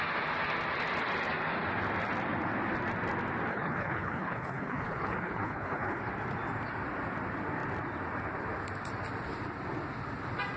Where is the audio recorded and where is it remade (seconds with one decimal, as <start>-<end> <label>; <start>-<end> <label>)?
0.0-3.5 recorded; 3.5-6.0 remade; 6.0-10.6 recorded

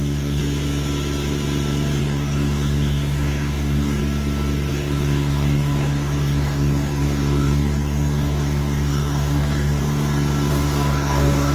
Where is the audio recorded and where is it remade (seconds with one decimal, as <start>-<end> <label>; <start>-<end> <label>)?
0.0-0.4 remade; 0.4-2.0 recorded; 2.0-4.0 remade; 4.0-4.7 recorded; 4.7-9.8 remade; 9.8-10.5 recorded; 10.5-11.5 remade

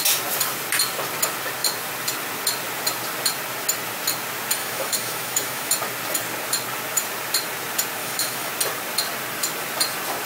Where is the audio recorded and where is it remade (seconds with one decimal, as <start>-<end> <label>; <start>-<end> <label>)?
0.0-4.6 recorded; 4.6-5.7 remade; 5.7-8.0 recorded; 8.0-8.5 remade; 8.5-10.3 recorded

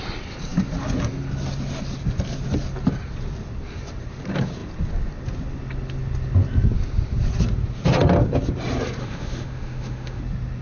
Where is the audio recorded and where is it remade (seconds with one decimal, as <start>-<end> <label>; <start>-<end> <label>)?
0.0-9.0 recorded; 9.0-10.2 remade; 10.2-10.6 recorded

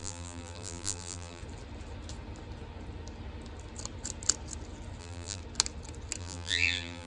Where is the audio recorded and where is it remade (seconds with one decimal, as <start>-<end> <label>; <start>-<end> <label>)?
0.0-1.4 remade; 1.4-5.0 recorded; 5.0-5.4 remade; 5.4-6.2 recorded; 6.2-7.1 remade

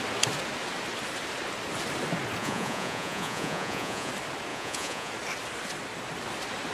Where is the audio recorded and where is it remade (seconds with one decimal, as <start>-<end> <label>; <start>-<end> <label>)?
0.0-2.4 recorded; 2.4-4.1 remade; 4.1-4.5 recorded; 4.5-5.1 remade; 5.1-6.7 recorded

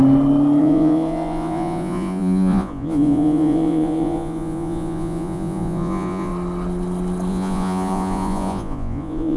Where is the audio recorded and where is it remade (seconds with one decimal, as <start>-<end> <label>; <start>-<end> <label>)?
0.0-0.6 recorded; 0.6-6.3 remade; 6.3-7.3 recorded; 7.3-9.4 remade

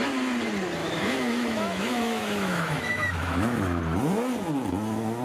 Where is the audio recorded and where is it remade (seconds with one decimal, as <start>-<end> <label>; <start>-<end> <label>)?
0.0-0.8 recorded; 0.8-3.8 remade; 3.8-5.2 recorded